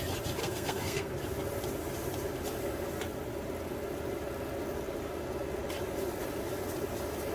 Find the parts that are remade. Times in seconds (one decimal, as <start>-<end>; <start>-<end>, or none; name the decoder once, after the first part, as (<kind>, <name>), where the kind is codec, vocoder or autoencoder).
0.4-1.1 (codec, SNAC)